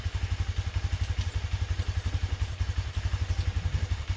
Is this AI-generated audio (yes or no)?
no